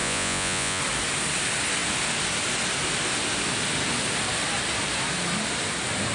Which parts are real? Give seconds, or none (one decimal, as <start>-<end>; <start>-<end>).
0.8-6.1